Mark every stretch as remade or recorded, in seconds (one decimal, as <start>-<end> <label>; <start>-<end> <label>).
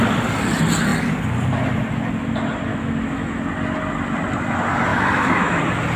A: 0.0-2.7 recorded; 2.7-3.4 remade; 3.4-4.9 recorded; 4.9-5.6 remade; 5.6-6.0 recorded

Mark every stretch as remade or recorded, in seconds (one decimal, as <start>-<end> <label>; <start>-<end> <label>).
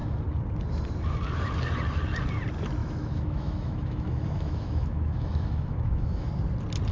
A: 0.0-2.8 recorded; 2.8-6.3 remade; 6.3-6.9 recorded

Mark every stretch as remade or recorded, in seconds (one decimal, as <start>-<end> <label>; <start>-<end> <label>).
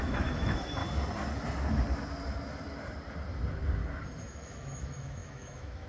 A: 0.0-0.8 remade; 0.8-4.3 recorded; 4.3-5.9 remade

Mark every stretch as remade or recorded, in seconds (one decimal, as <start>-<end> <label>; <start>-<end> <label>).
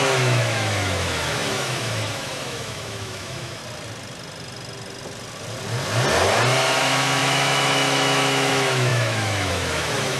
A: 0.0-3.6 remade; 3.6-6.8 recorded; 6.8-10.2 remade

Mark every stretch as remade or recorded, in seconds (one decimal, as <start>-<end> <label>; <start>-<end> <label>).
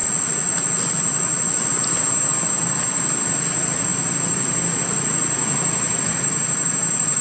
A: 0.0-7.2 recorded